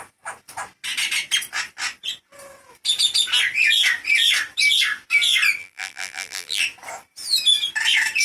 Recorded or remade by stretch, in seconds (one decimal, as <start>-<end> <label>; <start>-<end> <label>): 0.0-5.6 recorded; 5.6-6.6 remade; 6.6-8.2 recorded